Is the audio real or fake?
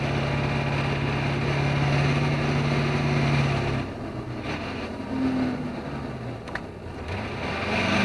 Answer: real